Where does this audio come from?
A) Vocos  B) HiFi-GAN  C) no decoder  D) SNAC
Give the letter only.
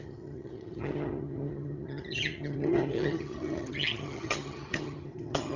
B